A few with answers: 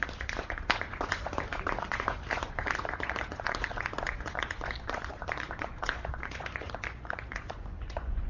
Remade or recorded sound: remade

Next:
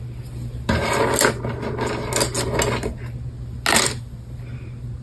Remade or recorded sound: recorded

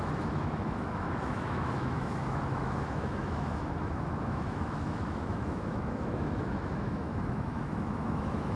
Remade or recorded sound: remade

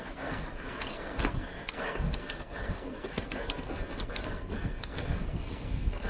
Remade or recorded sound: remade